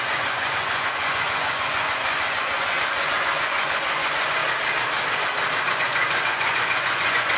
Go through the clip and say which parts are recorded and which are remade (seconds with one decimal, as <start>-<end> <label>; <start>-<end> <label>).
0.0-4.4 remade; 4.4-5.7 recorded; 5.7-7.4 remade